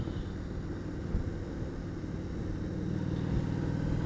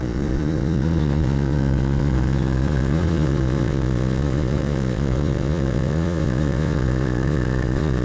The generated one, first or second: second